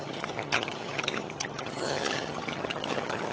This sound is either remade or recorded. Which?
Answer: remade